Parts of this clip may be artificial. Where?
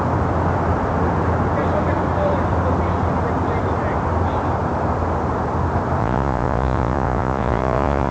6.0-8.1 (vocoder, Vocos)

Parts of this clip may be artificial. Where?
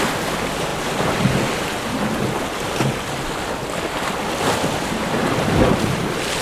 none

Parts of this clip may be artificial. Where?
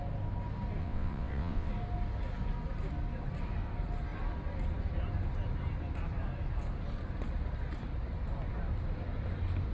0.8-1.7 (vocoder, WaveNeXt)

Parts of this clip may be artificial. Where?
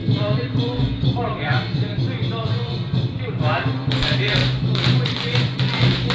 0.0-3.7 (vocoder, BigVGAN v2); 4.4-5.6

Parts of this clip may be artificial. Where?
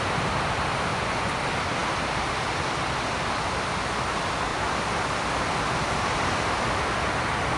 0.9-1.4 (vocoder, Vocos)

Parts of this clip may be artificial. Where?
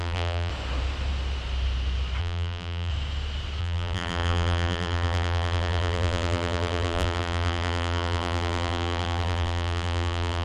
0.0-0.5 (vocoder, BigVGAN v2); 2.2-2.9; 3.6-10.4